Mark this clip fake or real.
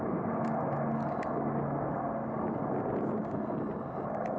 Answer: real